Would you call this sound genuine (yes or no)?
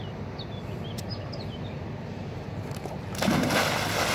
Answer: yes